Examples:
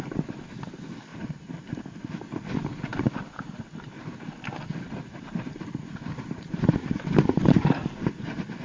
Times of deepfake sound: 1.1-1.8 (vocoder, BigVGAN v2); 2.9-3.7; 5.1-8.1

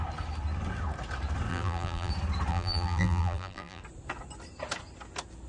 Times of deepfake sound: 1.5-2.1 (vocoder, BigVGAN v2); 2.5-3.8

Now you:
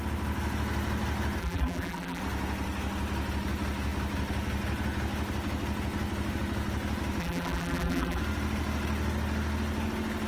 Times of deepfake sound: 1.4-2.2 (vocoder, BigVGAN v2); 7.2-8.2

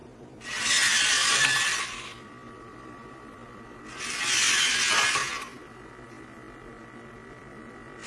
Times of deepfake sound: 0.0-3.6 (vocoder, BigVGAN v2); 5.3-5.9